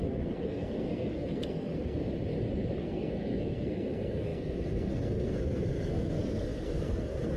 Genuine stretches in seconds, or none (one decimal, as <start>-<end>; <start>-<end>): 2.0-2.8